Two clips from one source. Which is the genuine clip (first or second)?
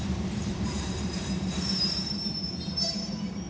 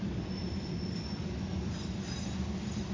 second